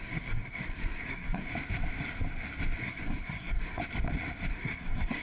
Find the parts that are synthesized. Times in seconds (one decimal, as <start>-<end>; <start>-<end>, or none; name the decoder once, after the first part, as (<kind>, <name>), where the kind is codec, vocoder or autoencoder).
0.0-1.5 (codec, SNAC); 2.8-3.8; 4.5-5.2